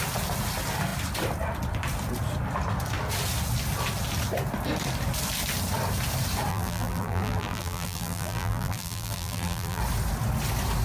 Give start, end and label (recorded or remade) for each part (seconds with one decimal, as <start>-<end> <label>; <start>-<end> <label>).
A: 0.0-6.5 recorded; 6.5-9.8 remade; 9.8-10.8 recorded

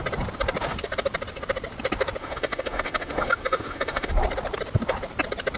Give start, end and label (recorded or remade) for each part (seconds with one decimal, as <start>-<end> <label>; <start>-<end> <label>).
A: 0.0-2.2 recorded; 2.2-4.1 remade; 4.1-5.6 recorded

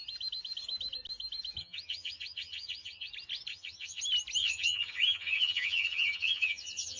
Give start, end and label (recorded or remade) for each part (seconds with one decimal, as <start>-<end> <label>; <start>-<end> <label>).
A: 0.0-1.6 recorded; 1.6-3.1 remade; 3.1-3.5 recorded; 3.5-4.0 remade; 4.0-4.4 recorded; 4.4-7.0 remade

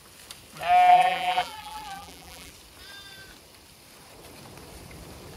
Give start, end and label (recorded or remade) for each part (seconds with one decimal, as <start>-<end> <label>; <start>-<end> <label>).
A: 0.0-0.9 recorded; 0.9-2.5 remade; 2.5-5.4 recorded